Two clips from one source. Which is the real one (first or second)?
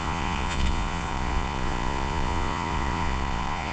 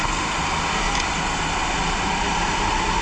second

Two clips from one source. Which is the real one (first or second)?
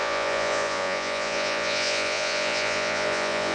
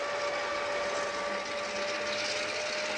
second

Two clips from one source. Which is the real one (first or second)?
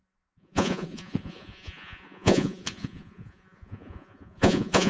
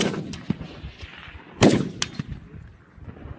second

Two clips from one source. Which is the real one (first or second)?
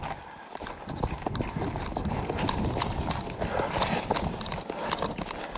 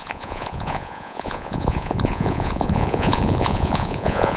first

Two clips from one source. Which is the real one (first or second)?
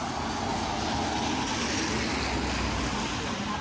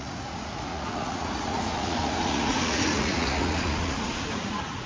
first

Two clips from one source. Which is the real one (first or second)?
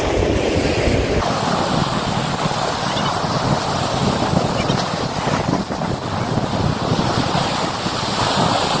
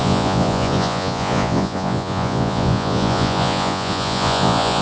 first